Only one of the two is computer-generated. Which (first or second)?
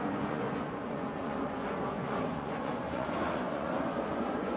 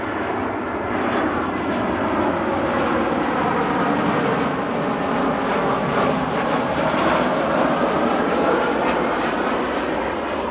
first